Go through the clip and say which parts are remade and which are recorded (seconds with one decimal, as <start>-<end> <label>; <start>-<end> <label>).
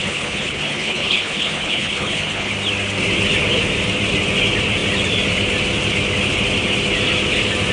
0.0-2.5 remade; 2.5-7.7 recorded